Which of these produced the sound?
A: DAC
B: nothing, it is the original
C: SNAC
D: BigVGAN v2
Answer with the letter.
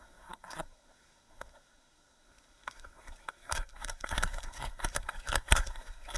C